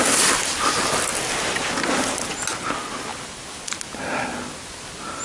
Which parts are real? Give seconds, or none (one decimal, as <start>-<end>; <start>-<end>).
0.0-5.2